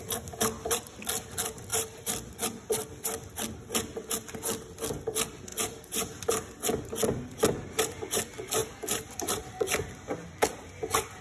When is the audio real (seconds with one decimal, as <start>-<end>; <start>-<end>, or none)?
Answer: 0.0-1.7; 3.4-5.5; 6.3-8.6; 9.9-11.2